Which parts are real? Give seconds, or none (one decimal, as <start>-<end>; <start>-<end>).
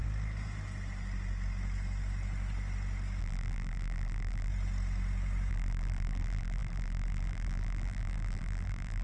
0.0-3.2; 4.5-5.5